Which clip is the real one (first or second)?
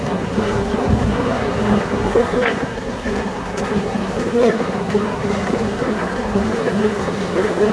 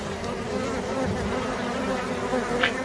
second